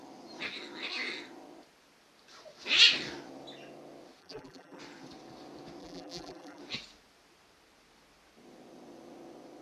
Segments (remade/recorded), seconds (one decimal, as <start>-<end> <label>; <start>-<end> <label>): 0.0-4.2 recorded; 4.2-4.8 remade; 4.8-5.8 recorded; 5.8-6.6 remade; 6.6-9.6 recorded